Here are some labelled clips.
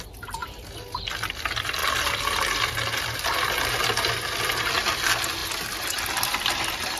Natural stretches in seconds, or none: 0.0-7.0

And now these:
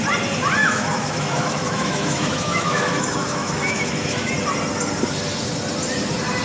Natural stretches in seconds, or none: 0.0-0.6; 4.3-6.4